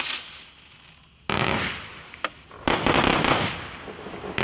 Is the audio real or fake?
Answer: real